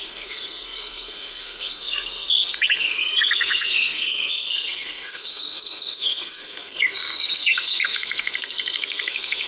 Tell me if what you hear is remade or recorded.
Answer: remade